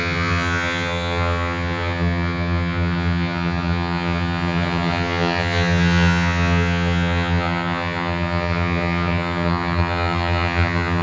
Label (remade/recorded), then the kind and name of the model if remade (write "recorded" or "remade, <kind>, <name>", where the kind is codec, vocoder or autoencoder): remade, vocoder, HiFi-GAN